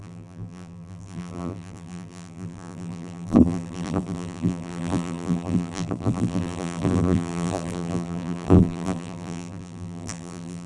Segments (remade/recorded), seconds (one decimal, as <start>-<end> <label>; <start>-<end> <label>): 0.0-10.7 remade